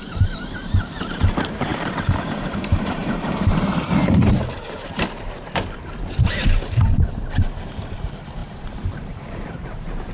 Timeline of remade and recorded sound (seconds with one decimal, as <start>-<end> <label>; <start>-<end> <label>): 0.0-1.7 remade; 1.7-2.2 recorded; 2.2-10.1 remade